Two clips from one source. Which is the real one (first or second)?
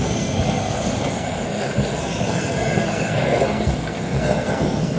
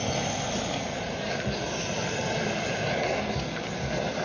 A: second